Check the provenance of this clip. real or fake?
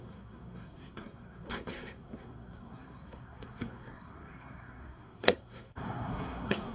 fake